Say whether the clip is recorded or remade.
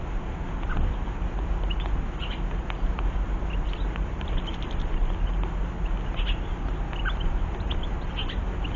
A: recorded